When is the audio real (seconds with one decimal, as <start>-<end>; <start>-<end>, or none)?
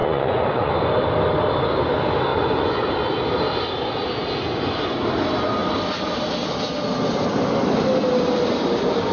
0.7-2.3; 2.9-9.1